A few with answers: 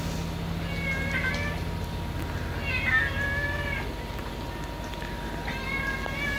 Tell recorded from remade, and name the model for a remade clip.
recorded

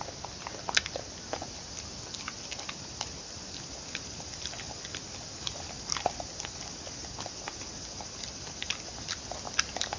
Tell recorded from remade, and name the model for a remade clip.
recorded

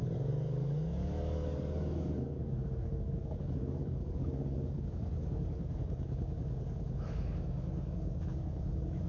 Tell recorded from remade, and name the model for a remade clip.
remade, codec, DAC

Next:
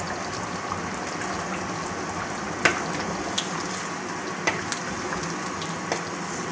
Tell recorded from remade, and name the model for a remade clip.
recorded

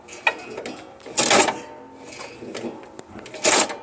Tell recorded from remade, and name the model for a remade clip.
recorded